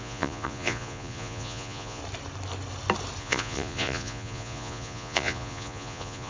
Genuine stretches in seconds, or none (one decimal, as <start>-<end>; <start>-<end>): 2.0-3.2

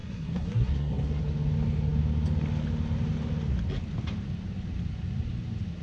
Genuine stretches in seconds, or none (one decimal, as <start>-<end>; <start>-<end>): 1.2-5.8

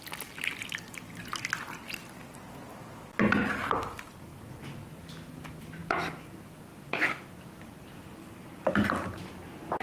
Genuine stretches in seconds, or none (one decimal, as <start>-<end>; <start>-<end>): 0.0-9.8

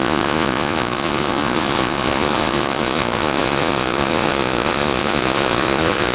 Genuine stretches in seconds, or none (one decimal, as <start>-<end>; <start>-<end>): none